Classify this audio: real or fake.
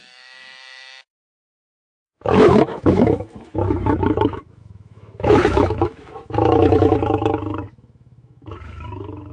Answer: fake